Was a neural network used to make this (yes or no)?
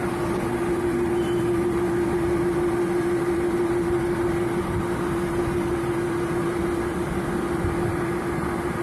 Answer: no